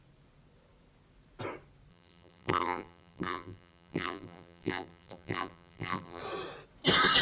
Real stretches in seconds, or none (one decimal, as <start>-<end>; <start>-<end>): 0.0-1.9; 6.2-7.2